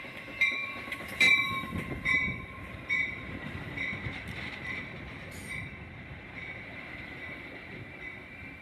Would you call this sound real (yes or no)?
no